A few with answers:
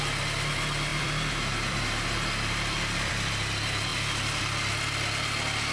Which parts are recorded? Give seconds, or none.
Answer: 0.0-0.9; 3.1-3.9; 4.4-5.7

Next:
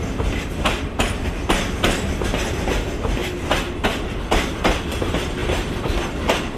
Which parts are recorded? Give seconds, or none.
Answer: 0.0-3.2; 4.2-5.4

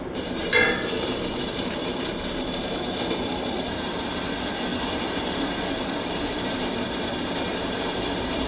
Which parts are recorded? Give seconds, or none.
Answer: none